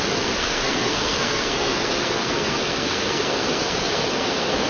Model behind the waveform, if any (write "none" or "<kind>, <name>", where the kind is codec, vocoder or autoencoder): codec, SNAC